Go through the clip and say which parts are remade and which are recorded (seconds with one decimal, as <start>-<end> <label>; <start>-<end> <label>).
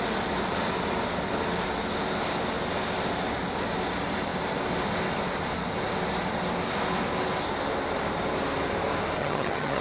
0.0-9.2 recorded; 9.2-9.8 remade